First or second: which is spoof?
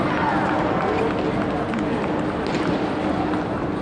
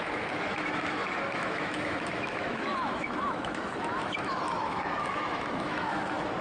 second